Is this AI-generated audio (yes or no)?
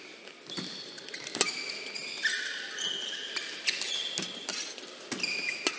no